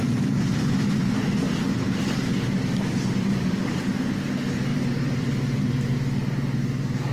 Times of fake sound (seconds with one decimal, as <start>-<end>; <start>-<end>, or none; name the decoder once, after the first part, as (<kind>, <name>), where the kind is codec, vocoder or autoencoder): 4.7-5.9 (vocoder, BigVGAN v2)